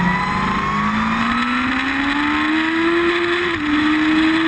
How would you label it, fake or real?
real